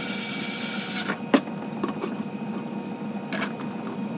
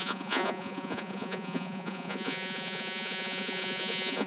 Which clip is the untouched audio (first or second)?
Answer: first